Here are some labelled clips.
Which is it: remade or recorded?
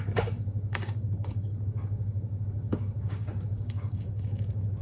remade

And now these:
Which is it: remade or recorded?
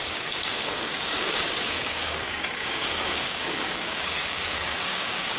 remade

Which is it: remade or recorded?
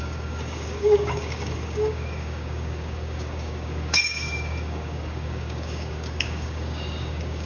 remade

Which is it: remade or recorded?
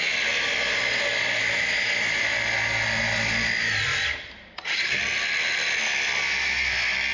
recorded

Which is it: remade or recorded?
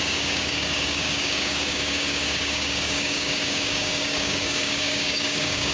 remade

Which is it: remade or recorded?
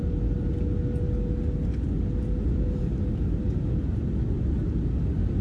recorded